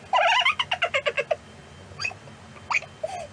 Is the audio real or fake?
real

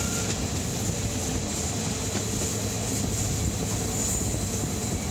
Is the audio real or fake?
real